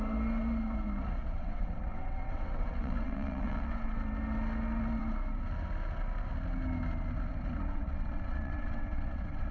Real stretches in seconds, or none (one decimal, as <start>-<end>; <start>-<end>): 0.0-1.2; 4.0-7.7